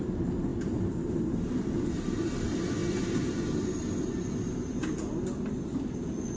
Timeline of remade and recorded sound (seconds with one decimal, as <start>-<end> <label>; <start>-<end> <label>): 0.0-6.4 recorded